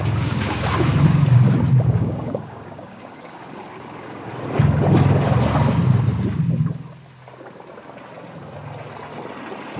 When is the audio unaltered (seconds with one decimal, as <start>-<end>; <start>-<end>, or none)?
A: 0.9-1.8; 4.3-9.8